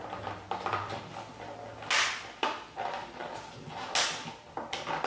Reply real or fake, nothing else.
real